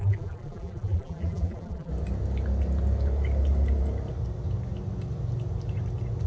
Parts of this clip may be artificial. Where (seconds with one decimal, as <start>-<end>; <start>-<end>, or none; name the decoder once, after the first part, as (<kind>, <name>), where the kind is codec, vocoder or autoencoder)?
0.0-1.9 (vocoder, BigVGAN v2)